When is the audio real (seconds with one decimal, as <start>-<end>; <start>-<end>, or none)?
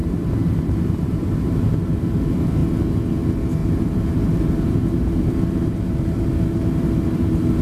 2.1-3.6